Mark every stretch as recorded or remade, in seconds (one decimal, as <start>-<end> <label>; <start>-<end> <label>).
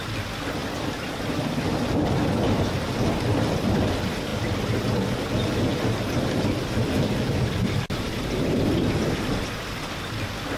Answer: 0.0-0.6 recorded; 0.6-3.8 remade; 3.8-4.3 recorded; 4.3-4.8 remade; 4.8-5.7 recorded; 5.7-9.3 remade; 9.3-10.6 recorded